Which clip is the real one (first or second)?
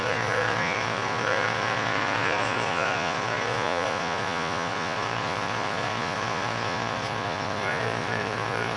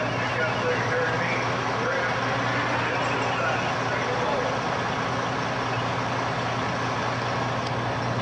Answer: second